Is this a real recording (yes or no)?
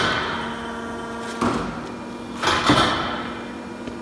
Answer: yes